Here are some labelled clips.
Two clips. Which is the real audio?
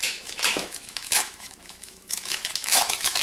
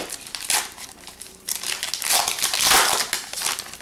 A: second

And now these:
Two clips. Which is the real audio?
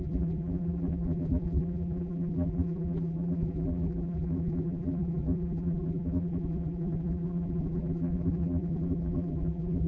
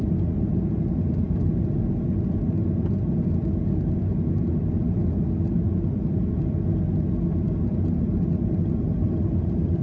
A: second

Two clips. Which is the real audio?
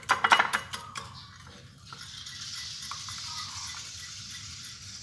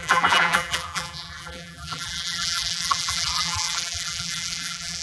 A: first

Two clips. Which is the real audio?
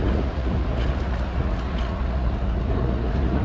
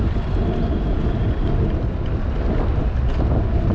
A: second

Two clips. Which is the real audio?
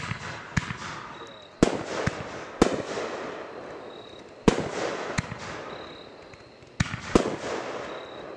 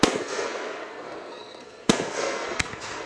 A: first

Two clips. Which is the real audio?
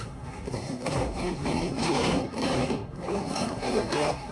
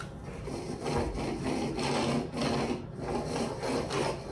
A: second